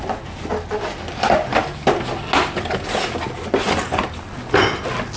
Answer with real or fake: real